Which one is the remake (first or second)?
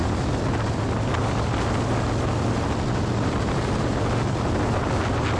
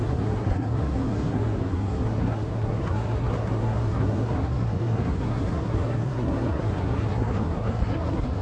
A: second